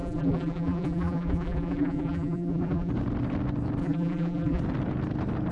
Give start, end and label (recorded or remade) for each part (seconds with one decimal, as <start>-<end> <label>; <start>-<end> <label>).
0.0-2.9 remade; 2.9-3.8 recorded; 3.8-4.6 remade; 4.6-5.5 recorded